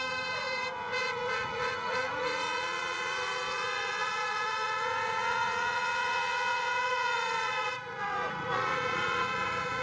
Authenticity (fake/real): fake